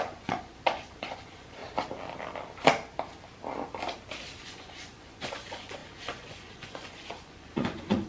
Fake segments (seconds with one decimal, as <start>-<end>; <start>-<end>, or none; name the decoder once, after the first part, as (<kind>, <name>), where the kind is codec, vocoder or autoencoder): 0.0-1.6 (vocoder, Vocos); 4.4-8.1